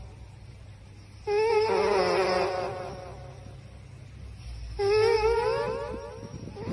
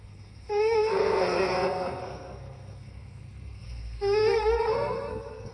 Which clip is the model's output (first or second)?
second